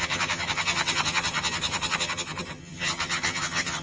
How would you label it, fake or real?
fake